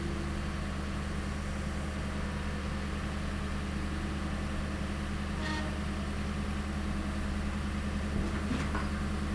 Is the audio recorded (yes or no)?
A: yes